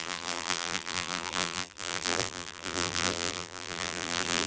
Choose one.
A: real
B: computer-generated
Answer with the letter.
B